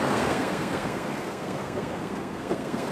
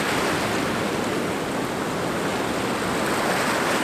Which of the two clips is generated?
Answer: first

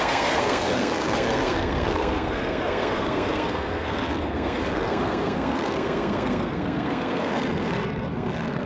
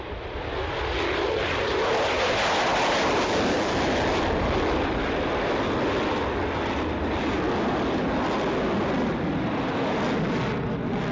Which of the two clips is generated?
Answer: first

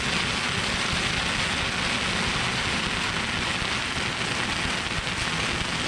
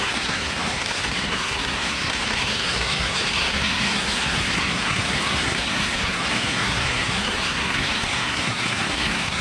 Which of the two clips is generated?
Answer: second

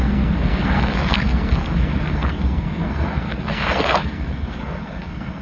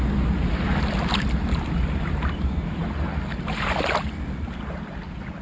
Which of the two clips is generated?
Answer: first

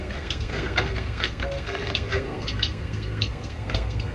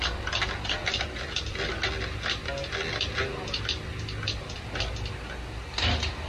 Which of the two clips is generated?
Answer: first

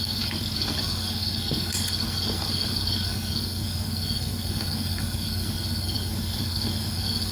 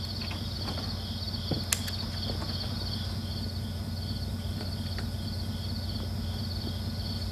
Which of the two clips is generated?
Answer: first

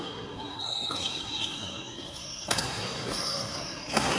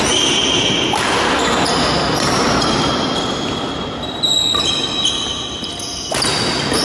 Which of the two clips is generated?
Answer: first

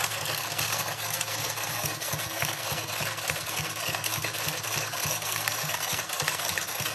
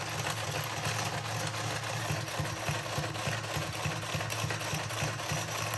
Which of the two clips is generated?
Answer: first